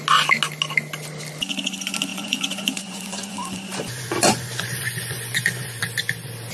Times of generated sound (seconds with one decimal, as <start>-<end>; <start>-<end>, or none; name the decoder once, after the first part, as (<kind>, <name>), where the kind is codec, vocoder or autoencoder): 2.1-5.8 (vocoder, Vocos)